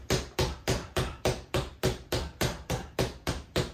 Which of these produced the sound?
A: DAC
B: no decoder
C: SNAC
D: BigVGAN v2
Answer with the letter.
D